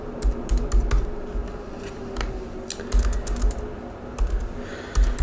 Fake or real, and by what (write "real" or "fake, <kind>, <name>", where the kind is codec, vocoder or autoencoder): real